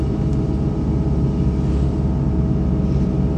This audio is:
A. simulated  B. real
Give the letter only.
B